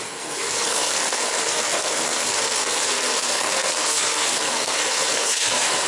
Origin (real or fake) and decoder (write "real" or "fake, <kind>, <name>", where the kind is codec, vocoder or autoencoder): fake, codec, SNAC